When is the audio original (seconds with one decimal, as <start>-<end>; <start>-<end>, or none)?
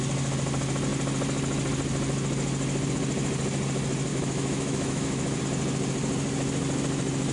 0.0-4.1; 5.4-7.3